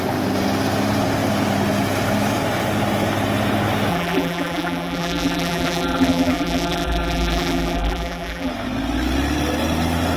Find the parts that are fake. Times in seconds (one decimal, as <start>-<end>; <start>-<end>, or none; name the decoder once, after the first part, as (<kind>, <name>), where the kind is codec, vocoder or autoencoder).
3.9-8.5 (vocoder, BigVGAN v2)